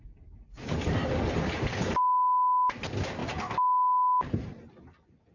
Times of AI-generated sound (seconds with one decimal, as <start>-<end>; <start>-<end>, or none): none